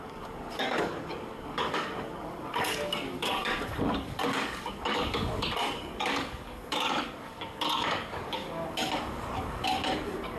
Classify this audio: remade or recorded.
remade